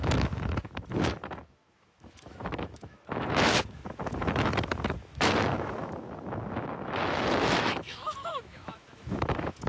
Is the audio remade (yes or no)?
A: yes